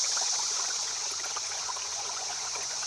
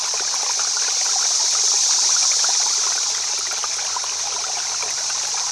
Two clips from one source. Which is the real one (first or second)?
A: second